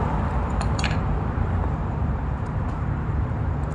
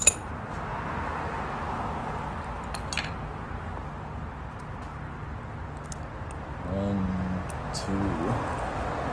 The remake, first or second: first